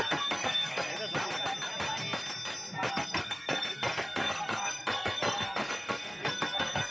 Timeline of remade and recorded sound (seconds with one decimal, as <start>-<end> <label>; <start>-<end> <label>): 0.0-0.9 remade; 0.9-2.9 recorded; 2.9-6.9 remade

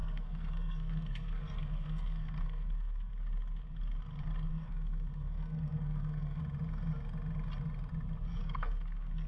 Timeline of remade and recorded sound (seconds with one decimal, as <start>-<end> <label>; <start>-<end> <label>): 0.0-3.1 remade; 3.1-4.5 recorded; 4.5-6.4 remade; 6.4-8.4 recorded; 8.4-9.3 remade

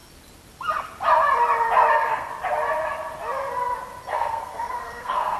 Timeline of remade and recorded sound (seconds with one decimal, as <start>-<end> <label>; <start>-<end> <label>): 0.0-1.9 recorded; 1.9-2.3 remade; 2.3-4.1 recorded; 4.1-5.4 remade

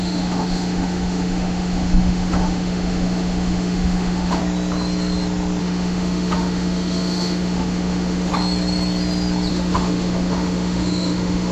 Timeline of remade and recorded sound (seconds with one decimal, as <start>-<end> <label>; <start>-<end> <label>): 0.0-4.4 remade; 4.4-5.6 recorded; 5.6-8.3 remade; 8.3-9.5 recorded; 9.5-11.5 remade

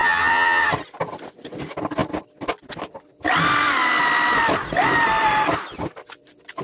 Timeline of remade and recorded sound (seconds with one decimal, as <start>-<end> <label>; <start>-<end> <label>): 0.0-0.7 remade; 0.7-6.6 recorded

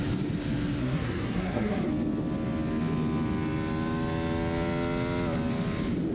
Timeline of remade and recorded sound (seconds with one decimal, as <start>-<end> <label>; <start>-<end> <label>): 0.0-0.8 recorded; 0.8-1.9 remade; 1.9-6.1 recorded

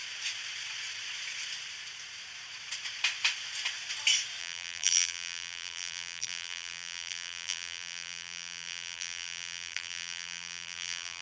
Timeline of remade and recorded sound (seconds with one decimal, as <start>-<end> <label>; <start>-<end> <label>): 0.0-4.4 recorded; 4.4-11.2 remade

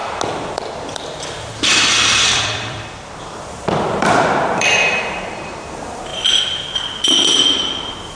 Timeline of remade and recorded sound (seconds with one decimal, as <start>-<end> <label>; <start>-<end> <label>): 0.0-0.5 recorded; 0.5-8.1 remade